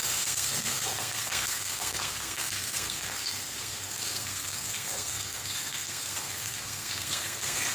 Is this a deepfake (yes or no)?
yes